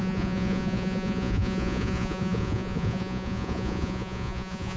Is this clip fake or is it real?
fake